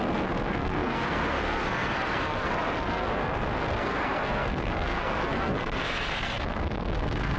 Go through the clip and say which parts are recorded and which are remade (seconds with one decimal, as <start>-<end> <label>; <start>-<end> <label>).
0.0-7.4 remade